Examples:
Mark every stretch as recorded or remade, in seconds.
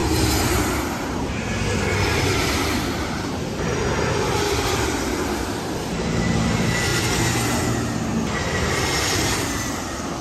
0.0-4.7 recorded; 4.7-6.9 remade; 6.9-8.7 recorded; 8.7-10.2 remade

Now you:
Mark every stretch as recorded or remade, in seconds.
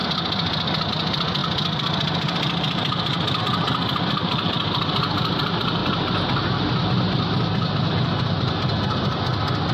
0.0-9.7 recorded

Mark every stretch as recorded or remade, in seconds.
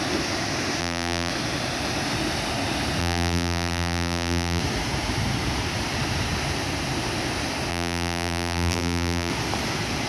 0.0-0.8 recorded; 0.8-1.3 remade; 1.3-3.0 recorded; 3.0-4.6 remade; 4.6-7.7 recorded; 7.7-9.3 remade; 9.3-10.1 recorded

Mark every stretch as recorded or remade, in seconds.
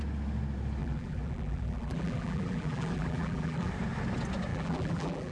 0.0-0.8 recorded; 0.8-3.7 remade; 3.7-4.5 recorded; 4.5-5.3 remade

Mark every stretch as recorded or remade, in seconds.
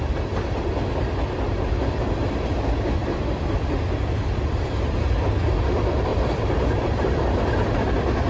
0.0-3.0 recorded; 3.0-3.6 remade; 3.6-6.1 recorded; 6.1-7.9 remade; 7.9-8.3 recorded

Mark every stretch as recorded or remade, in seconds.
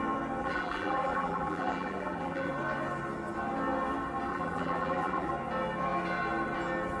0.0-0.4 recorded; 0.4-2.5 remade; 2.5-4.3 recorded; 4.3-5.3 remade; 5.3-7.0 recorded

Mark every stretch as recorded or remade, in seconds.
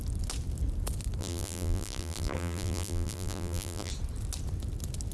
0.0-1.2 recorded; 1.2-3.9 remade; 3.9-5.1 recorded